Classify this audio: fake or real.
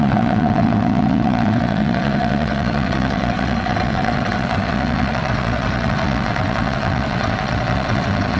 fake